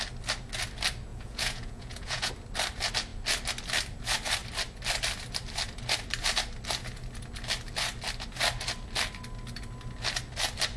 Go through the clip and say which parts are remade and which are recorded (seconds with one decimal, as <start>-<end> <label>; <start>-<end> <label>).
0.0-1.1 recorded; 1.1-2.3 remade; 2.3-10.8 recorded